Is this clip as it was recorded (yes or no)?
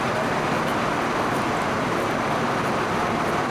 no